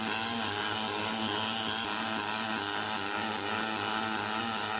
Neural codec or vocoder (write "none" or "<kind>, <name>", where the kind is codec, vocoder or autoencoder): none